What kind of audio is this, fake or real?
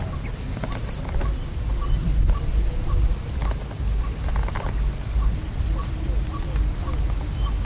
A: real